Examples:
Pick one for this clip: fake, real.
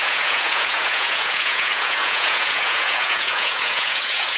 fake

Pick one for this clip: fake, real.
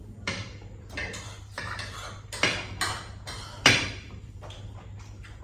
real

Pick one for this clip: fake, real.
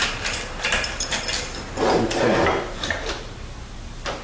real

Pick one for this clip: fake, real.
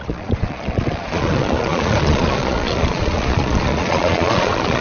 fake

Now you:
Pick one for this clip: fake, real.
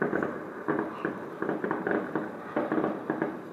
real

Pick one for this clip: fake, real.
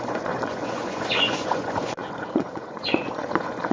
fake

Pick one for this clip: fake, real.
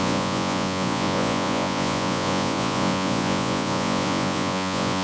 fake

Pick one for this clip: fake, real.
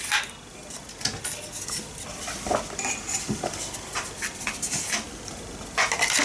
real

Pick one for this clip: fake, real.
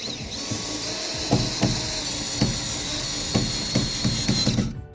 real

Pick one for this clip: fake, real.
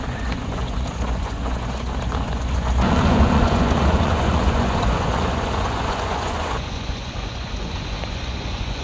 fake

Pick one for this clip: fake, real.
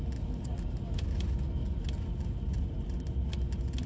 real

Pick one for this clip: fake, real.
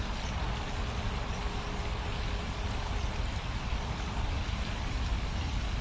real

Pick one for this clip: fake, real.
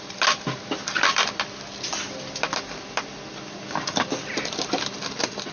real